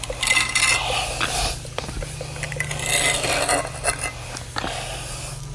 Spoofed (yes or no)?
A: no